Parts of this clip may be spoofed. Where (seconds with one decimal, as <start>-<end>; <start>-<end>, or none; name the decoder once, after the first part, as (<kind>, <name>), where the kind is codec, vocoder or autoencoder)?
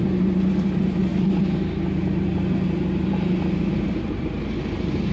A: none